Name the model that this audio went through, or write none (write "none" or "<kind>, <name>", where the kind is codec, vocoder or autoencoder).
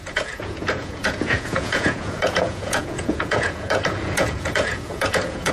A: vocoder, Vocos